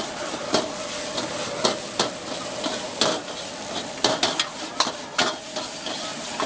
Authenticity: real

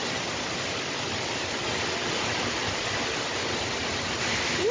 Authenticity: real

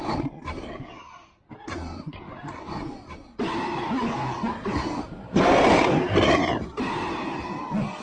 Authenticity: real